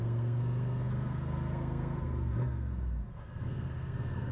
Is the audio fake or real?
fake